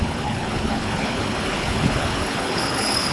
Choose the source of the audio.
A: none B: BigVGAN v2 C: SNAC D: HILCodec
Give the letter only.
D